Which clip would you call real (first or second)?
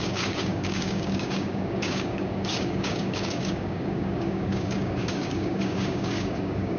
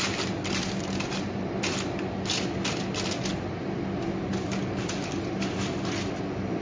second